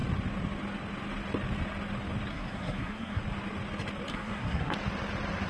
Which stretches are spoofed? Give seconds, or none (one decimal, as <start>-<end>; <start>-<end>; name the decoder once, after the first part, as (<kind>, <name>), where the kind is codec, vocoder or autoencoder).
2.3-3.2 (codec, SNAC); 4.1-4.7

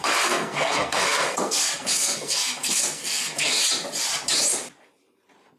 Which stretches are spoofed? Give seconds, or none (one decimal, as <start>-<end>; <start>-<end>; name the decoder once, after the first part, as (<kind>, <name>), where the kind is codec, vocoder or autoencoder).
0.0-3.6 (codec, SNAC)

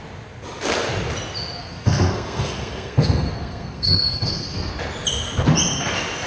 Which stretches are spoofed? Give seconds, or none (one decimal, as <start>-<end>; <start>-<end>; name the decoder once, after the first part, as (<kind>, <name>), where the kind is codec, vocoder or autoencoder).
1.6-4.7 (codec, SNAC)

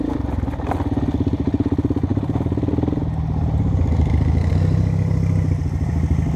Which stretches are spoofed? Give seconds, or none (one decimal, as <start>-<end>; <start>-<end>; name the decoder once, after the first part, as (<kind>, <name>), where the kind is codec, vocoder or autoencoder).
none

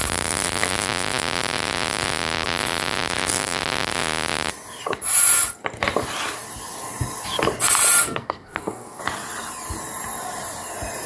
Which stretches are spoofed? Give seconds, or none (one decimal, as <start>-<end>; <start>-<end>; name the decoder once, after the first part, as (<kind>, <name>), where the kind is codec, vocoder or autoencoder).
8.0-9.0 (codec, SNAC)

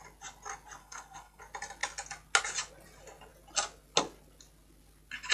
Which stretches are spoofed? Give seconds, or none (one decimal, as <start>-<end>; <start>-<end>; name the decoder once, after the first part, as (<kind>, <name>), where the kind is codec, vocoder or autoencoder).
0.8-1.4 (codec, SNAC)